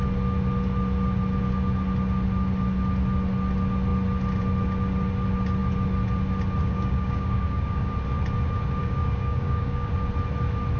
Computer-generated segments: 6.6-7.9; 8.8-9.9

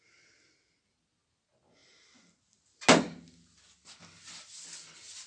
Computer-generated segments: none

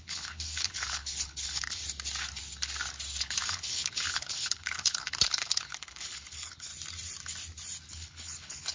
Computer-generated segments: 0.0-1.8; 3.2-6.7; 7.9-8.7

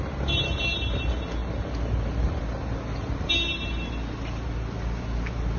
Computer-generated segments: none